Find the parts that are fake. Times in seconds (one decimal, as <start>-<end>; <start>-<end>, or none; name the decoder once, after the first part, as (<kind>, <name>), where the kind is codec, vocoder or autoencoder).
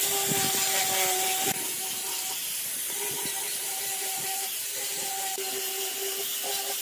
2.4-5.1 (vocoder, BigVGAN v2)